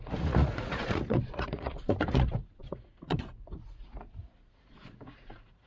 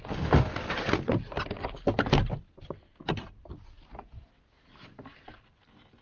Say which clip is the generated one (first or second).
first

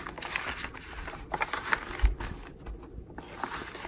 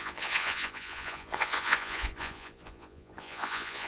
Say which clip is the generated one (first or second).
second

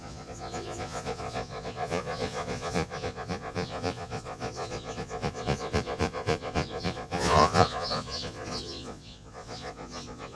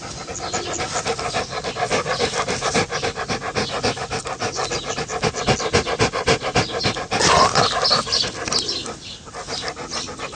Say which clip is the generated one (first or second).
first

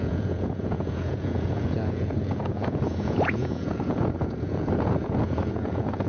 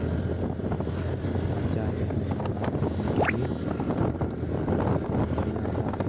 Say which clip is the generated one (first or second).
first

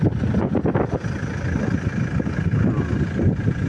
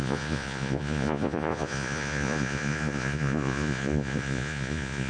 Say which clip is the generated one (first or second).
second